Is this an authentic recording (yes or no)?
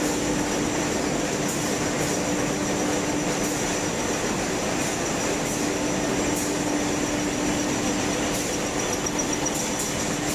yes